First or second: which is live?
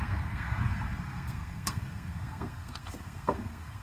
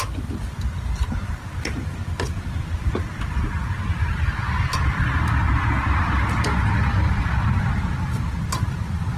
second